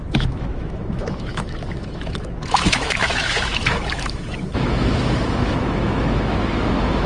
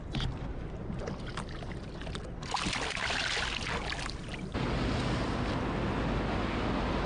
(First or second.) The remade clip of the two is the first